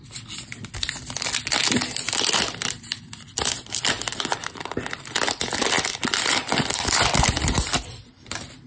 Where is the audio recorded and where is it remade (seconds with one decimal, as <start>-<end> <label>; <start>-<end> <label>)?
0.0-1.6 remade; 1.6-2.3 recorded; 2.3-8.7 remade